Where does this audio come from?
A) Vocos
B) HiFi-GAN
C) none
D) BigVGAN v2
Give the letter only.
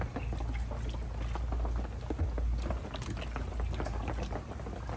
C